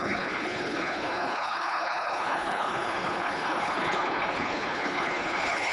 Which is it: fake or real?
fake